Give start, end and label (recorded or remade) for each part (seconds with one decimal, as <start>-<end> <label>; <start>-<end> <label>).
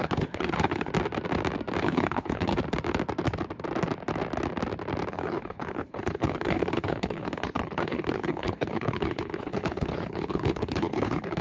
0.0-0.9 remade; 0.9-1.8 recorded; 1.8-2.5 remade; 2.5-5.1 recorded; 5.1-11.4 remade